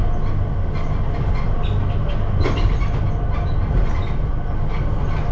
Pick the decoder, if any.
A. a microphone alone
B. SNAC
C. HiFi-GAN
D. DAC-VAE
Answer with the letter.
A